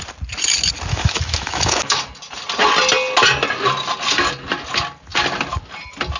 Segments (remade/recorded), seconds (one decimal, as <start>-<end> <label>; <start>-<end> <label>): 0.0-0.9 recorded; 0.9-2.0 remade; 2.0-6.2 recorded